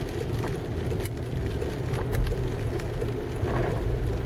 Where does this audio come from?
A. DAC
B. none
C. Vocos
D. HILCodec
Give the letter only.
B